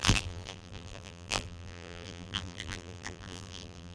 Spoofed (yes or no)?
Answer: yes